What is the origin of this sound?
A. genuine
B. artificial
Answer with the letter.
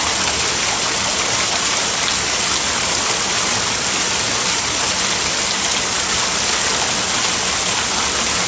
A